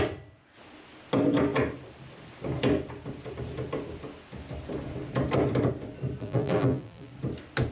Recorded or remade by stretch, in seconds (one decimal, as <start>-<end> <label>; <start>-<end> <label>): 0.0-6.2 recorded; 6.2-7.1 remade; 7.1-7.7 recorded